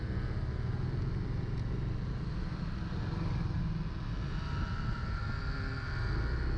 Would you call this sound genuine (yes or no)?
yes